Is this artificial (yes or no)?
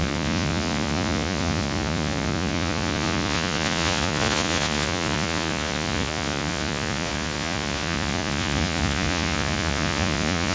yes